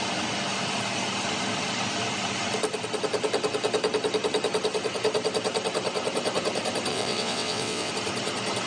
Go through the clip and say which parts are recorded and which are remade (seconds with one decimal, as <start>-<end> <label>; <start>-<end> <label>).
0.0-6.9 recorded; 6.9-7.9 remade; 7.9-8.7 recorded